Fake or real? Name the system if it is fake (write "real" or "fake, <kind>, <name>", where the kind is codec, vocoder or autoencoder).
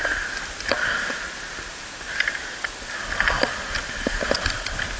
real